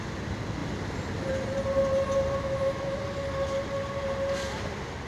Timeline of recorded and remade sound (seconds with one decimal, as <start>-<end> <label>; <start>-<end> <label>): 0.0-2.4 recorded; 2.4-3.0 remade; 3.0-5.1 recorded